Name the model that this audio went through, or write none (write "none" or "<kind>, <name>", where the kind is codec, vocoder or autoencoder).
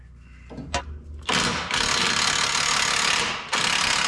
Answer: none